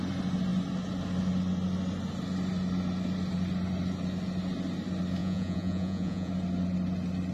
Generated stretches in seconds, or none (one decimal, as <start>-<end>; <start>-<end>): 5.2-6.3